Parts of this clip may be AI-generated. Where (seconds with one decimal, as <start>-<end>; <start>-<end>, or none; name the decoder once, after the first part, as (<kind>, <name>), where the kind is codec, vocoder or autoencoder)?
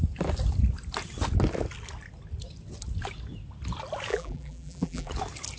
4.1-5.1 (vocoder, BigVGAN v2)